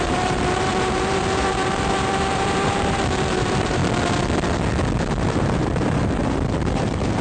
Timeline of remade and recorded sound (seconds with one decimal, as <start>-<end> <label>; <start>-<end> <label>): 0.0-3.8 remade; 3.8-5.4 recorded; 5.4-7.2 remade